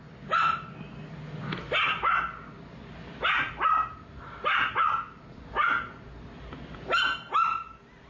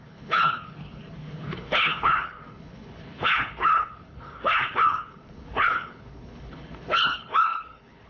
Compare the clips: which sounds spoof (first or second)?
second